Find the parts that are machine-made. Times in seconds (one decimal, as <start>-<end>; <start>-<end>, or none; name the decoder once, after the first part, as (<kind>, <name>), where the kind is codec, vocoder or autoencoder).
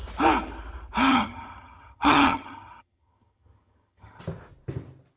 1.1-4.2 (vocoder, HiFi-GAN)